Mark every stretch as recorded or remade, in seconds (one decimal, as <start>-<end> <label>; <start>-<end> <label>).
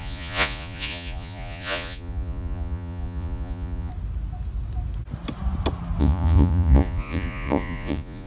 0.0-3.9 remade; 3.9-6.0 recorded; 6.0-8.3 remade